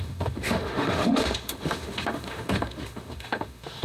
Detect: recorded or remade remade